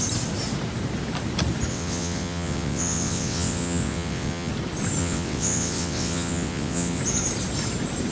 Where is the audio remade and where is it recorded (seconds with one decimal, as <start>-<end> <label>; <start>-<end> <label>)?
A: 0.0-1.7 recorded; 1.7-4.5 remade; 4.5-5.0 recorded; 5.0-7.0 remade; 7.0-8.1 recorded